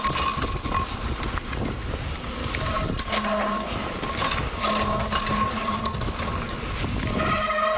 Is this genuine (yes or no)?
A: yes